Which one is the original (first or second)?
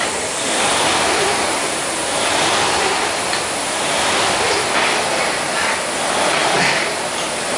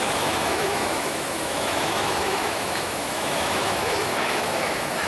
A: first